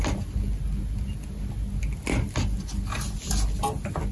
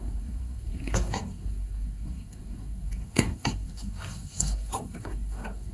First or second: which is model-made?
second